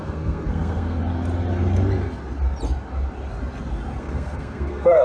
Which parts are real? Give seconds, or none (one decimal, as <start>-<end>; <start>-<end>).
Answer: 1.0-4.0